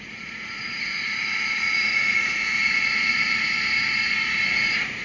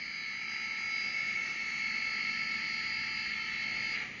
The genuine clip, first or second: second